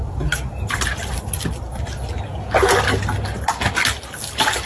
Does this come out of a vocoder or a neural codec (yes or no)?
no